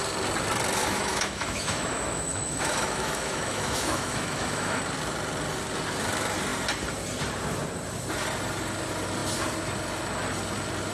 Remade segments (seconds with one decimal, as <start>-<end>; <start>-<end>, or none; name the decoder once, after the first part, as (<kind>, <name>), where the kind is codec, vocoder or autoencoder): 0.8-4.8 (autoencoder, DAC-VAE)